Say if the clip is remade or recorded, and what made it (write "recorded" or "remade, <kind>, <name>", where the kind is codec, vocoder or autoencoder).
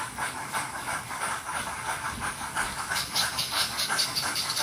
remade, codec, DAC